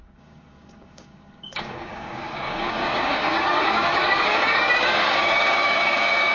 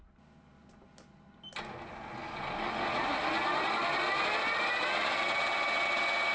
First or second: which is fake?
first